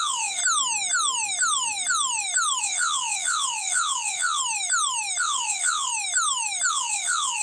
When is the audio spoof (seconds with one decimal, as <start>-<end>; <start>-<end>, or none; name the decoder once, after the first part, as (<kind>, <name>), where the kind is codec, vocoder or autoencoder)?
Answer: 0.0-0.4 (vocoder, WaveNeXt); 2.6-4.4; 5.2-5.9; 6.7-7.4